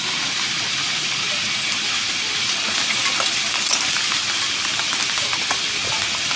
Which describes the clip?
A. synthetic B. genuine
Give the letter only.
B